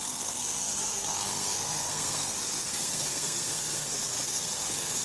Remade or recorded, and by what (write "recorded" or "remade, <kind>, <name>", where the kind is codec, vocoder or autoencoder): remade, codec, SNAC